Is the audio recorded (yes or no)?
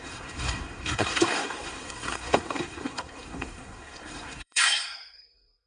no